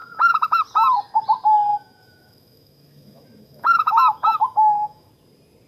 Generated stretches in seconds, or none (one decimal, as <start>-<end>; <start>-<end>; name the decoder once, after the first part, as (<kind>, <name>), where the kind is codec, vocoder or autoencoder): 0.0-0.6 (autoencoder, DAC-VAE); 1.7-5.1